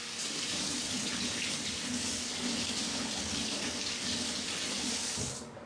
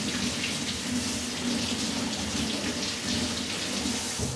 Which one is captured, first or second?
second